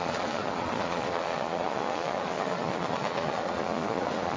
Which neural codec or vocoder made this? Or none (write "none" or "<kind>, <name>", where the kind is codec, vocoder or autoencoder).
vocoder, Vocos